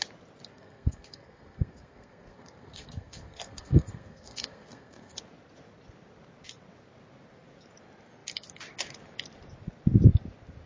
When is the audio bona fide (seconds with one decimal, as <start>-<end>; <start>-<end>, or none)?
0.0-0.5; 5.2-10.7